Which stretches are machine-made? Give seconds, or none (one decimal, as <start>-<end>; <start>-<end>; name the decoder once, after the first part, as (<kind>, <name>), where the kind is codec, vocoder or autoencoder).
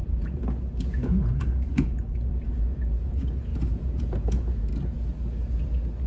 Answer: 0.0-4.7 (vocoder, Vocos)